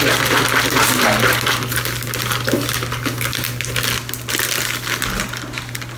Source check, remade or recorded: recorded